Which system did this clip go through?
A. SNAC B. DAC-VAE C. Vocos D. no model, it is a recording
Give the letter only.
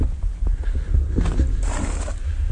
D